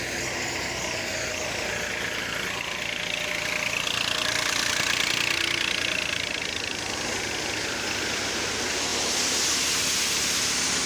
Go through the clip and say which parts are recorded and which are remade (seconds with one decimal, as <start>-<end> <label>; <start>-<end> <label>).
0.0-10.9 recorded